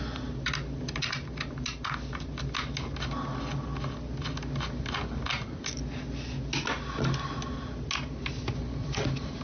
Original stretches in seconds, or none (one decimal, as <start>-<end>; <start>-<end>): 0.0-9.4